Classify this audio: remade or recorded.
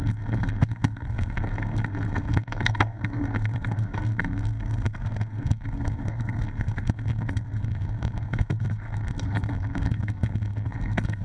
remade